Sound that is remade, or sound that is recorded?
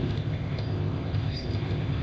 remade